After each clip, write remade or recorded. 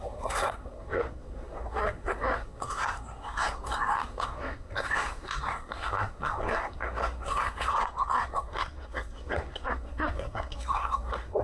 remade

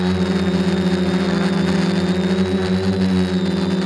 recorded